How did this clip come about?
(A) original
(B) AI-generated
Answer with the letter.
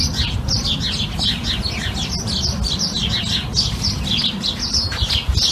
A